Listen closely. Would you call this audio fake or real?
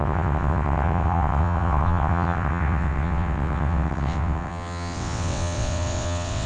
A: fake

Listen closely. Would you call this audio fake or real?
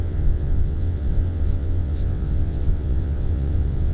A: fake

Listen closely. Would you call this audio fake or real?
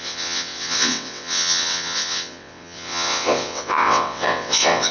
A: fake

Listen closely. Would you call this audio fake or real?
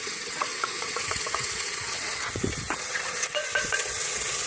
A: fake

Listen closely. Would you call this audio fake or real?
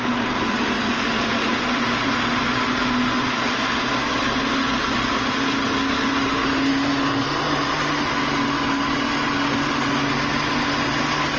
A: real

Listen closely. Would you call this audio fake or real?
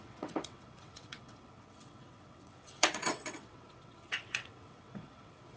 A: fake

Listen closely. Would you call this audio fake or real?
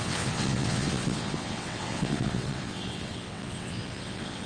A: fake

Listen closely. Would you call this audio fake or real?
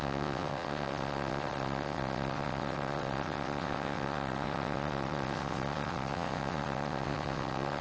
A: fake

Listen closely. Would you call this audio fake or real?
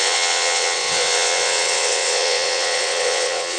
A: fake